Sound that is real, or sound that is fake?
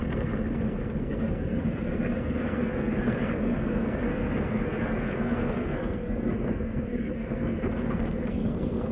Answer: fake